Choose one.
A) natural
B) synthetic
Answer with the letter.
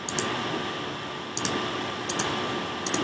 A